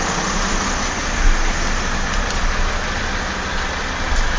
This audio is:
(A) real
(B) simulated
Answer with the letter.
A